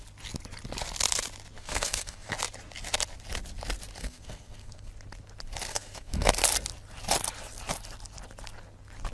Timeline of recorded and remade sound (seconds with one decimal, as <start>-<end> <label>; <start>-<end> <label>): 0.0-1.6 recorded; 1.6-2.3 remade; 2.3-4.0 recorded; 4.0-4.9 remade; 4.9-5.7 recorded; 5.7-6.3 remade; 6.3-9.1 recorded